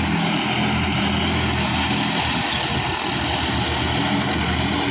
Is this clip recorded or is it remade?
recorded